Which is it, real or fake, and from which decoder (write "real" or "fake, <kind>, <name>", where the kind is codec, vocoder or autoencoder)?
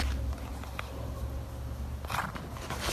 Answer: real